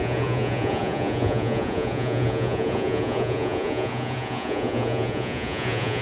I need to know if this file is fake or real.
fake